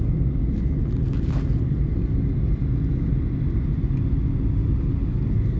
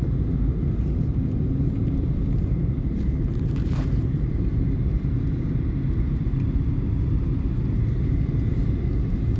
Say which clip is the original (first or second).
first